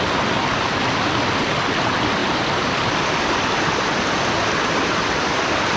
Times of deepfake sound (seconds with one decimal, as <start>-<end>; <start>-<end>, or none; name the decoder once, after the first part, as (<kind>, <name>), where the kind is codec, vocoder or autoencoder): none